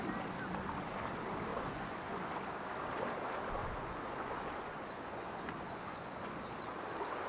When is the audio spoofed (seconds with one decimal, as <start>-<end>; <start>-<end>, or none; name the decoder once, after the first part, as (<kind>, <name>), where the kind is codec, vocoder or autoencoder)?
1.5-2.3 (vocoder, Vocos); 3.6-6.5